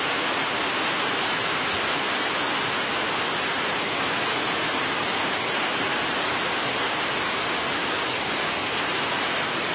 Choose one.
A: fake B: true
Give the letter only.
B